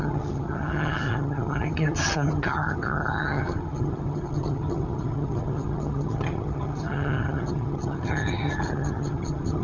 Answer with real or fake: fake